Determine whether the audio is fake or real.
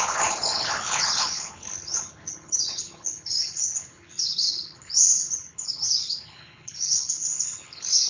fake